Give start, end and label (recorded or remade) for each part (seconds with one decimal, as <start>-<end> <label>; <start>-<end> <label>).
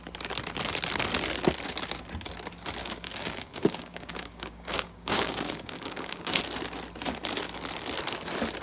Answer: 0.0-2.8 recorded; 2.8-6.4 remade; 6.4-8.6 recorded